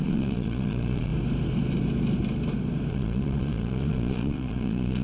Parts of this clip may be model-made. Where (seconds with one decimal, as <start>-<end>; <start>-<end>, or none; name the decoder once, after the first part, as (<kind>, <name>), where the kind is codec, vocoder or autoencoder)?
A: 0.0-1.1 (vocoder, Vocos); 2.9-5.0